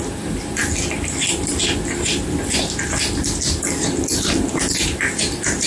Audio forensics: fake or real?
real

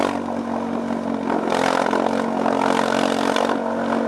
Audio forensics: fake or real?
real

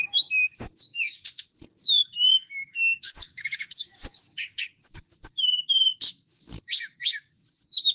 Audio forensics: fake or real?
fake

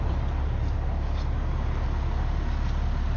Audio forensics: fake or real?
real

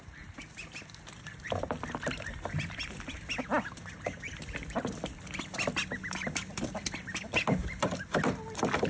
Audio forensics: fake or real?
real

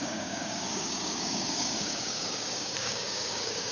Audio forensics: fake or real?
fake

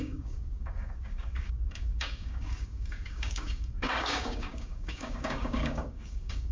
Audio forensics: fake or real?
fake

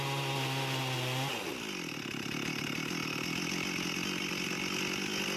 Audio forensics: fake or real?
real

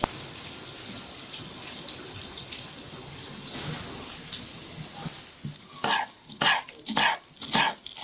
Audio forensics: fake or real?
real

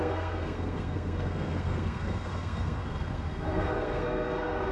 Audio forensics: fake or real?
fake